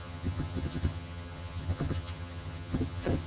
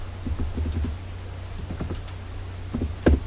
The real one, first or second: second